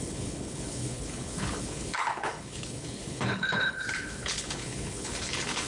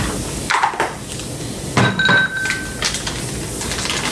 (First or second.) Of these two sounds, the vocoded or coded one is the first